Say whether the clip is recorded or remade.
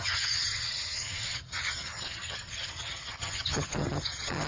remade